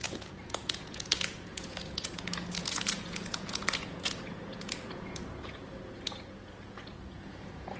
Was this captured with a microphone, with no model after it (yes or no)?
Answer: no